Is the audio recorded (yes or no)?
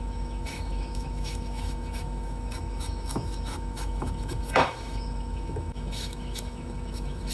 no